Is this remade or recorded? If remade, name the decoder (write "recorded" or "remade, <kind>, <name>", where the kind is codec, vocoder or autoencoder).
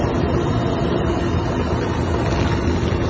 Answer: recorded